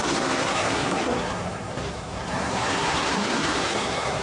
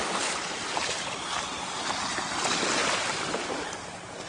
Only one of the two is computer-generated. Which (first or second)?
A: first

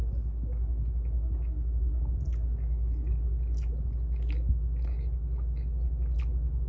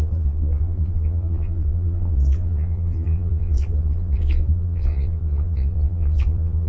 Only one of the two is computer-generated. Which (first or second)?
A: second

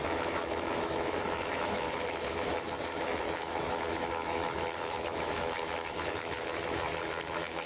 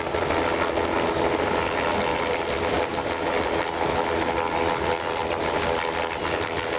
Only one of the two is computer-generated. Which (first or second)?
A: first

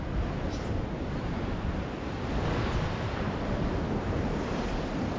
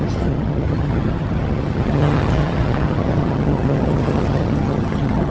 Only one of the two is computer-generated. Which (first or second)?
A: second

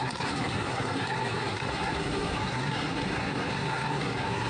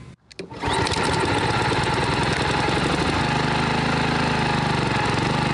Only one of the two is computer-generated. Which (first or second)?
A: first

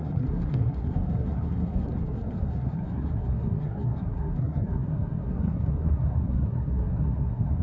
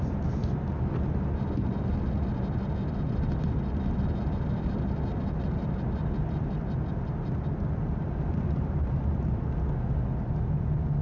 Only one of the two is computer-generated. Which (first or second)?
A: first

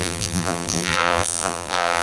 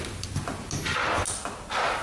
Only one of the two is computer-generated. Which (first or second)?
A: first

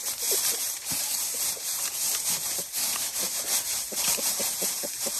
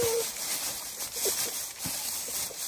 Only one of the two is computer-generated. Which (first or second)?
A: first